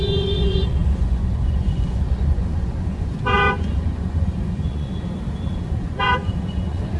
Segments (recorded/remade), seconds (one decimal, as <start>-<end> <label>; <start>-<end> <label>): 0.0-4.9 remade; 4.9-5.5 recorded; 5.5-7.0 remade

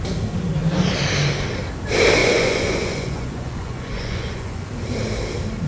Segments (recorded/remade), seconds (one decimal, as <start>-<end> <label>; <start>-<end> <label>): 0.0-2.2 recorded; 2.2-4.6 remade; 4.6-5.7 recorded

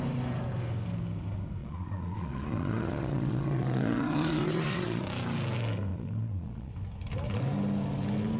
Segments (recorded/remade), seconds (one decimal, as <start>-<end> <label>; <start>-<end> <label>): 0.0-1.6 recorded; 1.6-5.0 remade; 5.0-5.9 recorded; 5.9-6.7 remade; 6.7-8.4 recorded